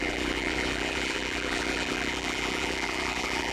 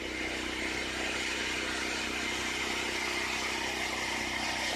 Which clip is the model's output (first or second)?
first